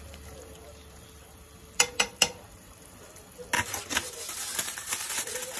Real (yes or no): no